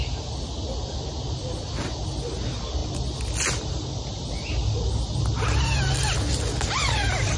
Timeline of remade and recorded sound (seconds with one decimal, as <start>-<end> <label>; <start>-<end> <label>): 0.0-7.4 recorded